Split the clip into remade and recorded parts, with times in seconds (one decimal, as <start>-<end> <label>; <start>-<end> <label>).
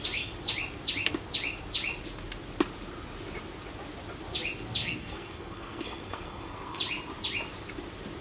0.0-4.8 recorded; 4.8-6.8 remade; 6.8-8.2 recorded